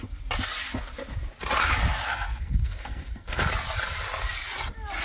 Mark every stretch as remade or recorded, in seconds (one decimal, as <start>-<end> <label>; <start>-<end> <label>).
0.0-2.1 recorded; 2.1-3.5 remade; 3.5-5.0 recorded